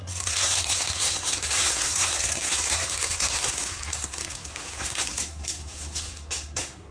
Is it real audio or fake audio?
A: fake